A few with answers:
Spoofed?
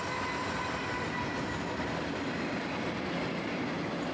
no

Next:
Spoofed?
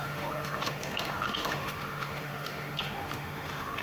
yes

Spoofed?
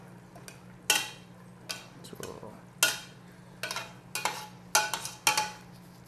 no